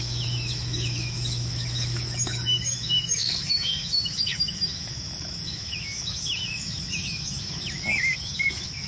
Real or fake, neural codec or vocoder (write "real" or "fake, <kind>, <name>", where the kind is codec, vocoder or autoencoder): fake, autoencoder, DAC-VAE